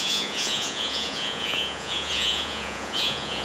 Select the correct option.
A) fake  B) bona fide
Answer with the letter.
A